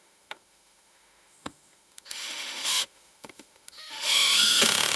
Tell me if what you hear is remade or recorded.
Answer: remade